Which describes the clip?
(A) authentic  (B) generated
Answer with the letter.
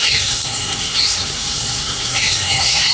B